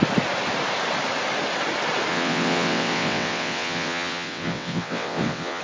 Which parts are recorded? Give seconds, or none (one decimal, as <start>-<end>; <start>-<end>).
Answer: 0.0-2.1